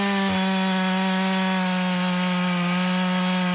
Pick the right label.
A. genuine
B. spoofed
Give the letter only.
A